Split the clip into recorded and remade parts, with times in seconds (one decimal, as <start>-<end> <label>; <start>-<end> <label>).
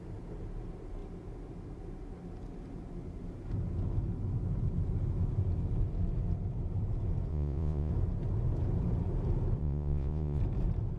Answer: 0.0-7.3 recorded; 7.3-7.9 remade; 7.9-9.6 recorded; 9.6-10.4 remade; 10.4-11.0 recorded